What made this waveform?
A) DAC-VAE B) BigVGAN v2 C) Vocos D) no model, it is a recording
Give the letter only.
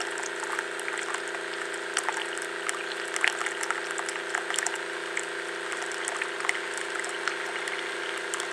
D